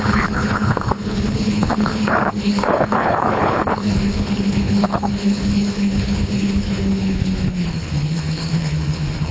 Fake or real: fake